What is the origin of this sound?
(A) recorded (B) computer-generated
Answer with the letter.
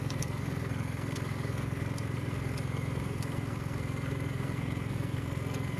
B